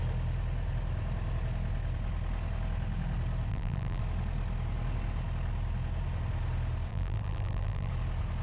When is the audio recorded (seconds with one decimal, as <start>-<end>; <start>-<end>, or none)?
0.0-3.5; 4.0-6.9; 7.9-8.4